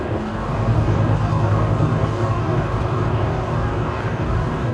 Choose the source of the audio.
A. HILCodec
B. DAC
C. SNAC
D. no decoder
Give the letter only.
B